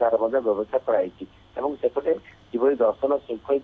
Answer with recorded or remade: recorded